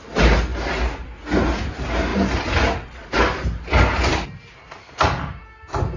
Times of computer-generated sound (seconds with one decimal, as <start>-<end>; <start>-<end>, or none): 4.8-5.4